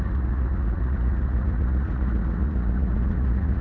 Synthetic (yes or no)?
yes